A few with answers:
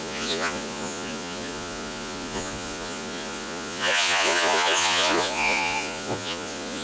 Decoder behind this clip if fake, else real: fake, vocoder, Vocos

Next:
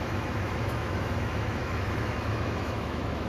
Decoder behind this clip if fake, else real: fake, autoencoder, DAC-VAE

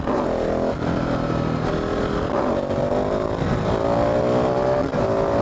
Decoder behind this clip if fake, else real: real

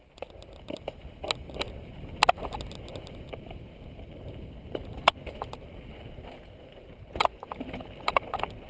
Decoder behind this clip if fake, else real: real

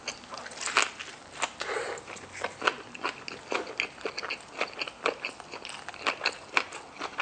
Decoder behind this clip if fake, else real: real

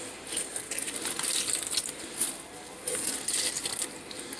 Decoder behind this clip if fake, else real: real